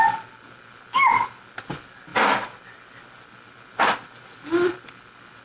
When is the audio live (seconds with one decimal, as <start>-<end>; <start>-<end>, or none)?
0.0-5.4